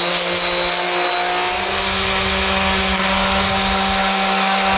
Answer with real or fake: real